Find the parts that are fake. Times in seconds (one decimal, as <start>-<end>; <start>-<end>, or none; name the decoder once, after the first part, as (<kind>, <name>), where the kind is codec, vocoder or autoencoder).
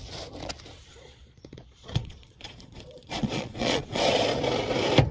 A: 0.9-4.0 (vocoder, Vocos)